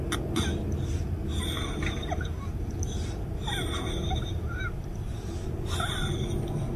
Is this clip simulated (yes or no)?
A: no